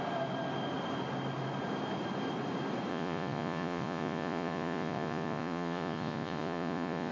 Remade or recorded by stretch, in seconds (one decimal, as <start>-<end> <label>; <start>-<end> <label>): 0.0-2.9 recorded; 2.9-7.1 remade